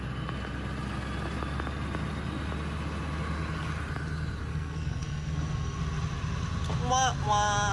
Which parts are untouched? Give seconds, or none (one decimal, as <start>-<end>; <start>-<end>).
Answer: 0.0-4.5; 5.8-7.7